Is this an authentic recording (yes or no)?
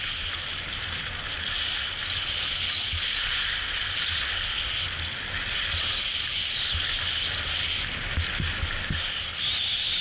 yes